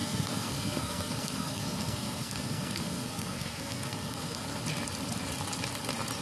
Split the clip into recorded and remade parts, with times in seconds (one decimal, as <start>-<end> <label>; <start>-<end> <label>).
0.0-4.5 remade; 4.5-6.2 recorded